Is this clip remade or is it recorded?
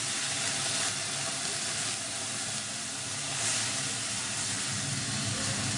recorded